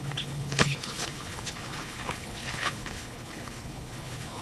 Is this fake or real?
fake